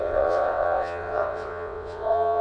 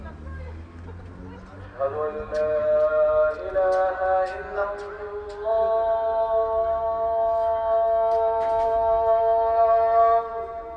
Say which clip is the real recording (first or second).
second